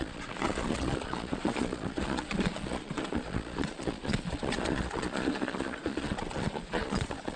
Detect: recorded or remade remade